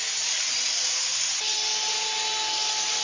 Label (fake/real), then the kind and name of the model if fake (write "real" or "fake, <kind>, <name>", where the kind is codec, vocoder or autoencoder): real